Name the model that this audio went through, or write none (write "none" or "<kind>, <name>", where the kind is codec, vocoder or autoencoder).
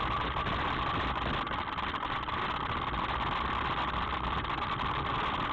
none